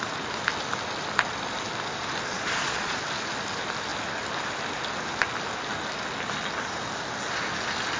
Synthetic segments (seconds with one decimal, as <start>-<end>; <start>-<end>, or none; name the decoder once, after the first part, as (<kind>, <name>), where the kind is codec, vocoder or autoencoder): 2.3-3.0 (vocoder, Vocos)